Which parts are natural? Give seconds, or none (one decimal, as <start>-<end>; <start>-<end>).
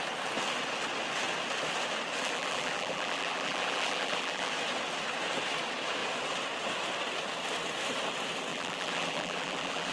0.0-2.2; 4.5-8.5